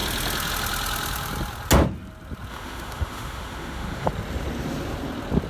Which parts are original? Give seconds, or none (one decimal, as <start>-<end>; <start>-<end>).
0.0-2.5; 4.1-5.5